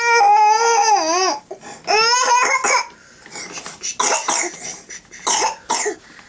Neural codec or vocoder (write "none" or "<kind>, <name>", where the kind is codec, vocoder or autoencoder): none